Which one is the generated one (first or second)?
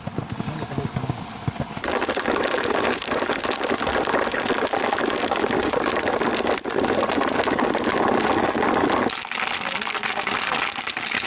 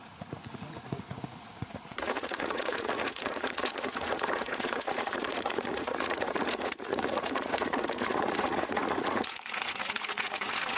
second